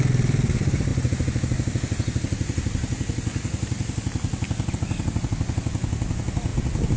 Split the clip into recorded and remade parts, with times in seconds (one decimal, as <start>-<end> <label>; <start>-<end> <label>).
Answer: 0.0-7.0 recorded